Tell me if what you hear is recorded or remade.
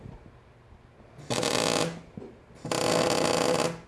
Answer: recorded